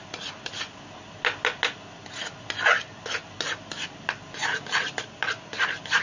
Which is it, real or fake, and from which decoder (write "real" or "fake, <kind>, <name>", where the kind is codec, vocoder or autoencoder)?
real